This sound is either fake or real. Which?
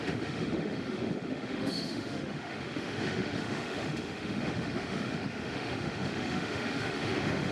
fake